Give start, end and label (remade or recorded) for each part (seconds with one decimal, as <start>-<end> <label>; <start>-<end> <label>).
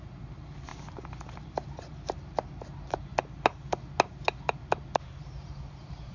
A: 0.0-3.1 remade; 3.1-4.9 recorded; 4.9-6.1 remade